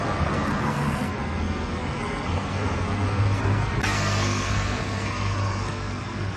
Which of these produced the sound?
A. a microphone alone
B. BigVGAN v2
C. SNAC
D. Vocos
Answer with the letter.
C